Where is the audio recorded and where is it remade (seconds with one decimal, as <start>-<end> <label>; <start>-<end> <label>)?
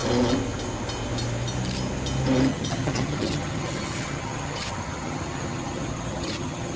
0.0-2.5 recorded; 2.5-6.8 remade